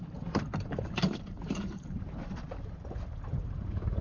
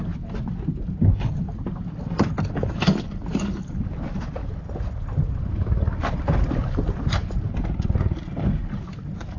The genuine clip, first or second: second